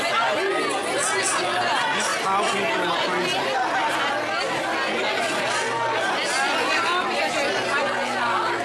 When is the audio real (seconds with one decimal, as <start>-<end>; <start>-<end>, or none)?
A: 0.0-8.6